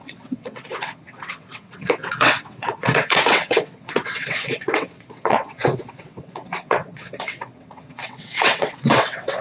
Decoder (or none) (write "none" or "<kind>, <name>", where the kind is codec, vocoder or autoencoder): vocoder, WaveNeXt